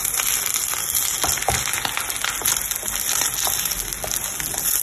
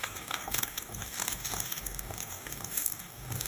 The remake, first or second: second